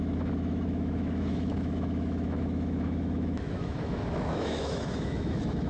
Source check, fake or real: fake